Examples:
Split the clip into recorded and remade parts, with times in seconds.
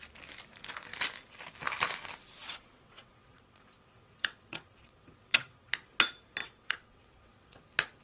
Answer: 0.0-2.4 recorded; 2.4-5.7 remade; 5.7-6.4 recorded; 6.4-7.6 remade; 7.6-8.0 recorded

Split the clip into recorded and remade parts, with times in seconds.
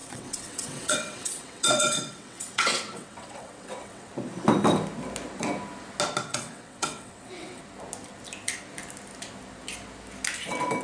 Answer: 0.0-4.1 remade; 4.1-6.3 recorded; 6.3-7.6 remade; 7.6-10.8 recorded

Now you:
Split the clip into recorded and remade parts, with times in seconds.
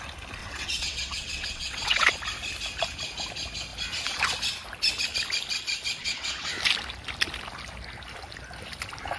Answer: 0.0-0.4 recorded; 0.4-2.1 remade; 2.1-6.0 recorded; 6.0-6.5 remade; 6.5-9.2 recorded